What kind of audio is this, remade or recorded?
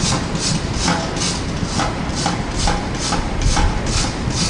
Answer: recorded